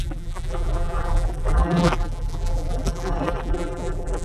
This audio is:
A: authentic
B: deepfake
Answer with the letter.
B